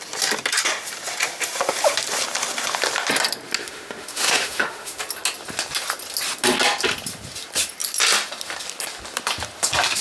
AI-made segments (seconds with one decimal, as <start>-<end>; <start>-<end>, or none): 3.6-5.0